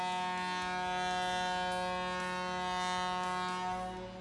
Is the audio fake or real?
real